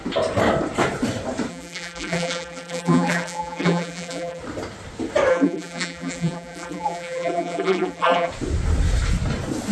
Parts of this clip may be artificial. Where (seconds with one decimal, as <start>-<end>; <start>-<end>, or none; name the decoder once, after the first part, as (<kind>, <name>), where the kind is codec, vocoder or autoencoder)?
1.5-4.4 (vocoder, BigVGAN v2); 5.3-8.3